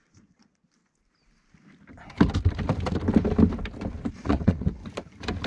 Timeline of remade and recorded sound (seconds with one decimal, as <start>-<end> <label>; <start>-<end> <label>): 0.0-0.8 remade; 0.8-4.1 recorded; 4.1-4.8 remade; 4.8-5.5 recorded